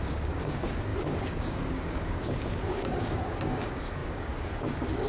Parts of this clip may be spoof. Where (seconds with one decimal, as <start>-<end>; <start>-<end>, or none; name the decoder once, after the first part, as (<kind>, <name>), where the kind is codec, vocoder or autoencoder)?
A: 0.0-5.1 (codec, DAC)